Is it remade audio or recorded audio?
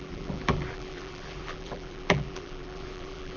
remade